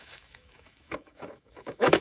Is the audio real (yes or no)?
no